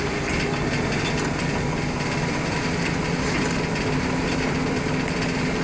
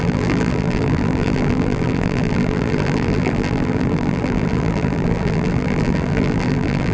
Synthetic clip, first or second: second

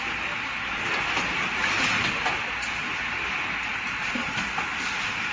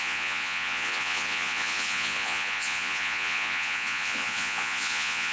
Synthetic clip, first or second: second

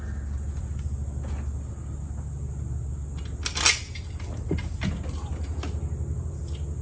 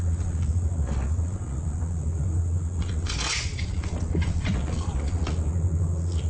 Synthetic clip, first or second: second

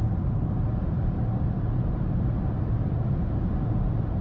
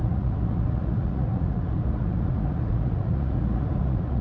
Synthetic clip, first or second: second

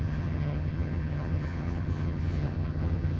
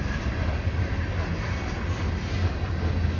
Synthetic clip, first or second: first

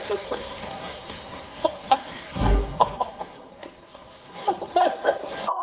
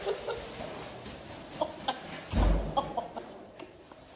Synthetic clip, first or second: first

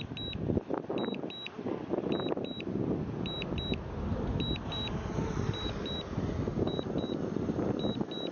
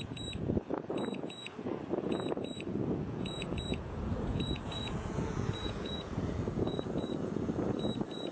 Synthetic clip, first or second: second